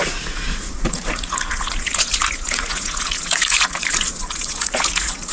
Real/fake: fake